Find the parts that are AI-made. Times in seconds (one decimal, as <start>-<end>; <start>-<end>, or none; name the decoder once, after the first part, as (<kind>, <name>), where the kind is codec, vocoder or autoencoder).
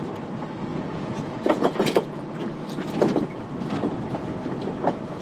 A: 0.7-2.2 (vocoder, Vocos)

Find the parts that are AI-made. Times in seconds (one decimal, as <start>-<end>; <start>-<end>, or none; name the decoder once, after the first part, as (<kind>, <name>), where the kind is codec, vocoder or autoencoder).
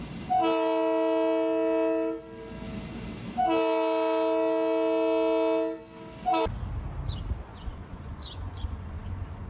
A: 7.5-9.5 (vocoder, Vocos)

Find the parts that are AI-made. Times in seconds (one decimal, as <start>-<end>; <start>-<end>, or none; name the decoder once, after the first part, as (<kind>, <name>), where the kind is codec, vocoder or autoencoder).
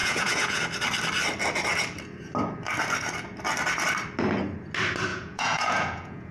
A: 0.0-0.6 (vocoder, Vocos); 5.1-6.3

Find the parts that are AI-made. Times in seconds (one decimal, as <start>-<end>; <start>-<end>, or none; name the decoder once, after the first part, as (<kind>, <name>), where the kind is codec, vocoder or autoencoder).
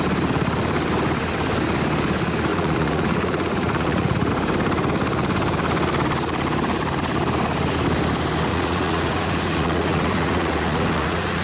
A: 2.5-4.3 (vocoder, Vocos); 8.5-11.4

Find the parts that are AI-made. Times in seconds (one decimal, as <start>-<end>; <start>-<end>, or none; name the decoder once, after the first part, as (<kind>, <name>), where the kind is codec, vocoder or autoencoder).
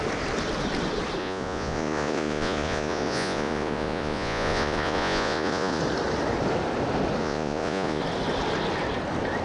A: 1.2-5.8 (vocoder, Vocos); 7.2-8.0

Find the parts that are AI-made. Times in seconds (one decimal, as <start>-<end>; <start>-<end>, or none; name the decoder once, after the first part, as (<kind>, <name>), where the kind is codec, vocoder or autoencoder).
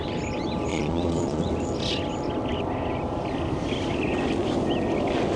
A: 0.7-1.4 (vocoder, Vocos)